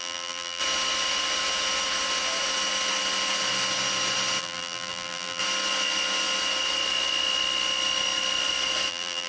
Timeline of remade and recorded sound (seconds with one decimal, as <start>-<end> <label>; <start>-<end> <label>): 0.0-0.6 remade; 0.6-4.4 recorded; 4.4-5.4 remade; 5.4-8.9 recorded; 8.9-9.3 remade